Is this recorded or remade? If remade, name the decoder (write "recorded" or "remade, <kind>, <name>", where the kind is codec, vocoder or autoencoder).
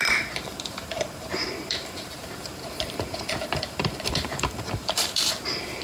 remade, vocoder, BigVGAN v2